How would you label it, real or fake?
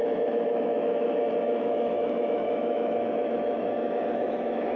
fake